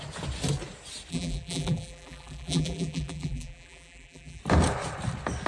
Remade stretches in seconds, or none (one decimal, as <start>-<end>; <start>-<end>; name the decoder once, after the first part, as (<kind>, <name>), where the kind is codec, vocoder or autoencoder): 1.1-4.4 (vocoder, BigVGAN v2)